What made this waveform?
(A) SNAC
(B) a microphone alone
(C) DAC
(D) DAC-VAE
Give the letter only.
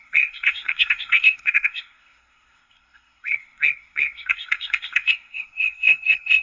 A